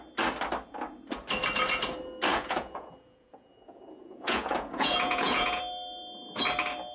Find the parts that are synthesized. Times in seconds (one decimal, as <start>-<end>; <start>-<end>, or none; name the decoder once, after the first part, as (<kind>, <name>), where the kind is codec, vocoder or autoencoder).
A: 2.3-5.6 (vocoder, Vocos)